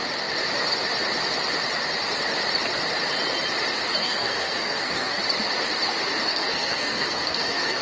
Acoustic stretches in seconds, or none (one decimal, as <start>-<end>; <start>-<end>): 0.0-4.0; 5.2-6.3